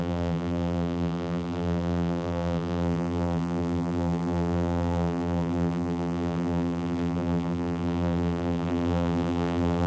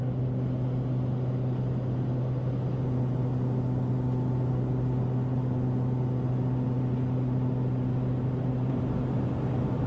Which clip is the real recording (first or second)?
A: second